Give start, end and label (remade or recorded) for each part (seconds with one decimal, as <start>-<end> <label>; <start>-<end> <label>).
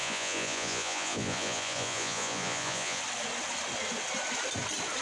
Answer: 0.0-3.0 remade; 3.0-5.0 recorded